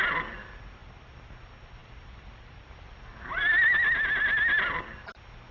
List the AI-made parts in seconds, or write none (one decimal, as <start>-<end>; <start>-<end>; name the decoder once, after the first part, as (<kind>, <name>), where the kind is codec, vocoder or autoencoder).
0.8-1.3 (vocoder, BigVGAN v2); 1.8-2.9